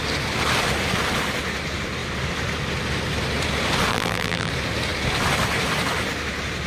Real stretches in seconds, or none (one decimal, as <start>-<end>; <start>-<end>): 0.0-3.9; 4.5-6.7